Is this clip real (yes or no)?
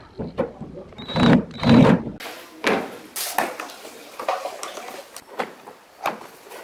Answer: yes